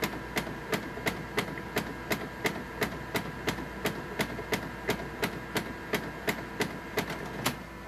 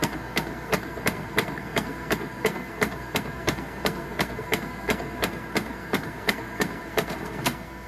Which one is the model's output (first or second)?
second